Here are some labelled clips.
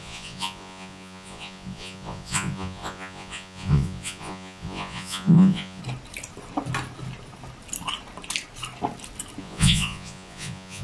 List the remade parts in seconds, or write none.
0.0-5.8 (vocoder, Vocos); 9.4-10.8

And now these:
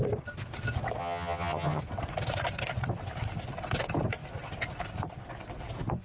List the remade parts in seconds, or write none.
1.0-1.8 (vocoder, HiFi-GAN)

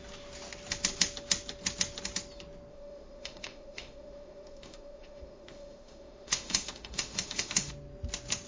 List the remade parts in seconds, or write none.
2.7-7.7 (autoencoder, DAC-VAE)

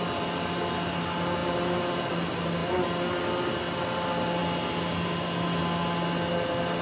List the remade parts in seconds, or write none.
none

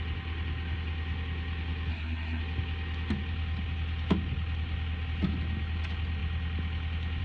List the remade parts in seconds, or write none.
1.9-2.4 (codec, SNAC)

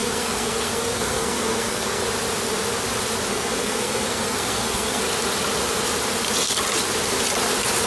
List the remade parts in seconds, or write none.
0.0-2.0 (codec, SNAC); 3.3-5.0

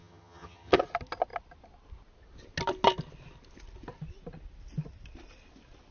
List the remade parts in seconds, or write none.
0.0-0.8 (vocoder, HiFi-GAN)

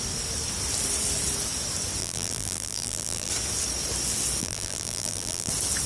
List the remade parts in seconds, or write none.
2.0-3.3 (vocoder, BigVGAN v2); 4.4-5.5